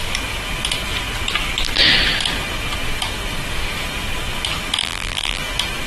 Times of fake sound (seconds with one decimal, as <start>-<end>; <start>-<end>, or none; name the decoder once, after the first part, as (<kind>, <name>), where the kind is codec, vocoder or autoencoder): 4.8-5.4 (vocoder, BigVGAN v2)